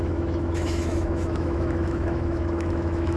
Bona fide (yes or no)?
no